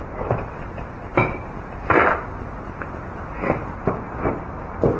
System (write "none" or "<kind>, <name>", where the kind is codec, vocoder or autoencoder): none